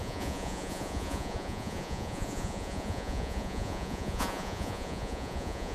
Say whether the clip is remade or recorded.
remade